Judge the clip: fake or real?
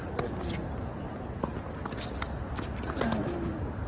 real